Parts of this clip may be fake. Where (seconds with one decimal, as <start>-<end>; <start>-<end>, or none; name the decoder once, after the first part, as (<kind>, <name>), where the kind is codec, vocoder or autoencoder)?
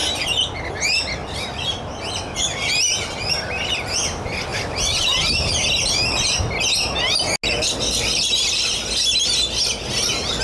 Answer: 0.0-0.7 (vocoder, BigVGAN v2); 1.2-2.0; 4.5-5.2